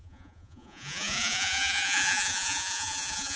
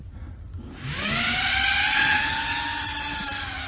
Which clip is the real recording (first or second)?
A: second